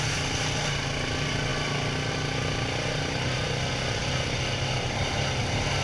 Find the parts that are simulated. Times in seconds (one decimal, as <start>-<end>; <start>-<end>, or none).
none